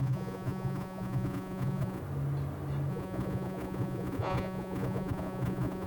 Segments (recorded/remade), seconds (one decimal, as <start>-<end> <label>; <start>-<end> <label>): 0.0-2.0 remade; 2.0-2.9 recorded; 2.9-5.9 remade